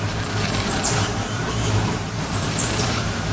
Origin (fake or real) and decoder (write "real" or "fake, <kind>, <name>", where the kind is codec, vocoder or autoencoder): fake, vocoder, BigVGAN v2